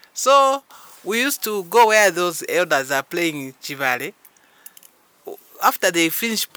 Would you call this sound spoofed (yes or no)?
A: no